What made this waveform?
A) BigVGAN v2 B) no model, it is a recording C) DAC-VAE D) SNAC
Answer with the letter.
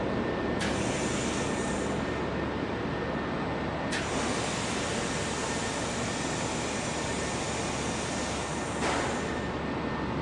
B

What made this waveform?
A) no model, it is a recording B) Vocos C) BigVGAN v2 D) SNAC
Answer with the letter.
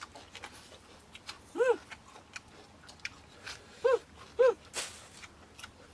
A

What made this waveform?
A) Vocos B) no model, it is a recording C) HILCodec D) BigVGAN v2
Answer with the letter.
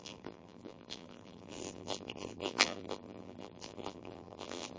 D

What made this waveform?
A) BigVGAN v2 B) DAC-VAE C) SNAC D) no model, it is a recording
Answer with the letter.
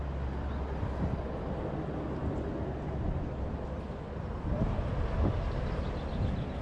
D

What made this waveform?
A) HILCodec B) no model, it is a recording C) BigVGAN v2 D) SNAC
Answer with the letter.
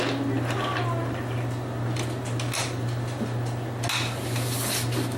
B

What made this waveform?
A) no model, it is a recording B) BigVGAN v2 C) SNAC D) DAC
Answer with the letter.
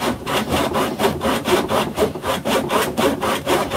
B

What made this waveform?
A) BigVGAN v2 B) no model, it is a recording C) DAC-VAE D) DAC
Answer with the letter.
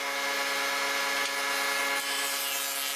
B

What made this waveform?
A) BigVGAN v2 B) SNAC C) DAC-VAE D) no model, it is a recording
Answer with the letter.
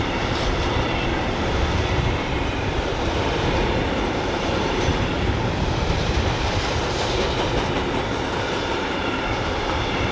A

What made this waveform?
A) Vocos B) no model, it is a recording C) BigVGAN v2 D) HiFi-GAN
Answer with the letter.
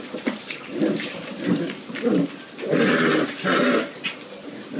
B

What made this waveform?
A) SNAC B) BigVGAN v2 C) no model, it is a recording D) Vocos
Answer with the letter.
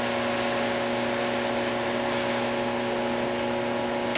C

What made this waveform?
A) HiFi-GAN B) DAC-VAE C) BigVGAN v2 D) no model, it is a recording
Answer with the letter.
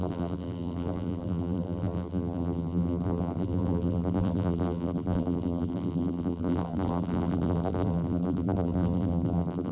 C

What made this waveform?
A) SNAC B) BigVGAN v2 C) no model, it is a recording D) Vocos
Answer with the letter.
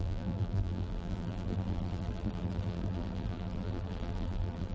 B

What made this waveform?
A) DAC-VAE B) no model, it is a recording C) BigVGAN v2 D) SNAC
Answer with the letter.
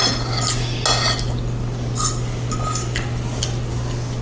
B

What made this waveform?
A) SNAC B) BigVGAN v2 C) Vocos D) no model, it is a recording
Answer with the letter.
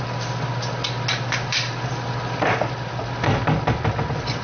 D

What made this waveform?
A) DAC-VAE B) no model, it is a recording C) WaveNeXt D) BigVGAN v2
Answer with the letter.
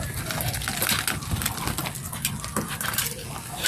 B